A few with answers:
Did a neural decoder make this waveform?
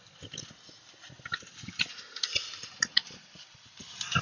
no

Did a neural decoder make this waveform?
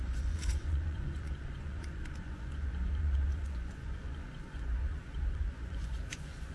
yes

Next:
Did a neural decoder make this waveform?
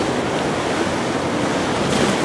no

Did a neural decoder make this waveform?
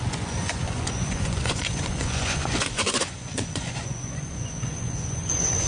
yes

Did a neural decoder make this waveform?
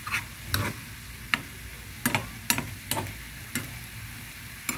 no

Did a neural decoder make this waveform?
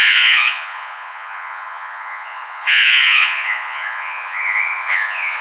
yes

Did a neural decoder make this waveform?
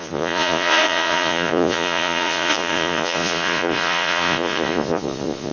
yes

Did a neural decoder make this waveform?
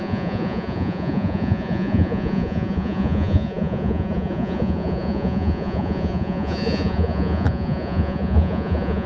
yes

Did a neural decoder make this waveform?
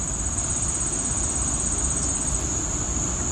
no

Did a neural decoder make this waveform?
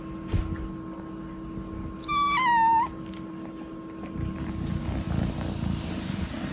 no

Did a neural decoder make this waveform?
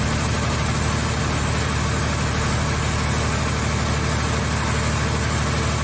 no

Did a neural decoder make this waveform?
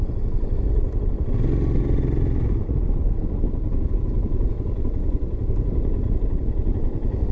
no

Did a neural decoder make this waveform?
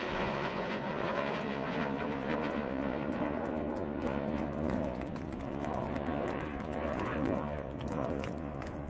yes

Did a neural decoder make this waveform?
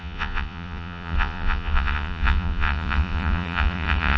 yes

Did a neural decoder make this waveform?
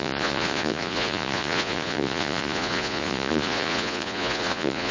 yes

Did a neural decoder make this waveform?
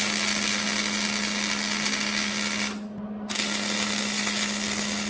no